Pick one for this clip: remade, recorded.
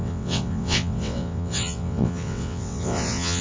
remade